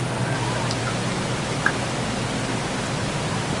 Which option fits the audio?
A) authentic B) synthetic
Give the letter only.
A